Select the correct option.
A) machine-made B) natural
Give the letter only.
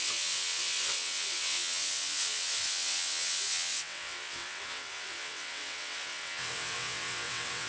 A